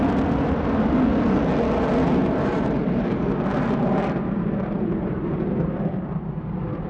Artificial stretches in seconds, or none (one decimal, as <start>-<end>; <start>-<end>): 2.2-6.3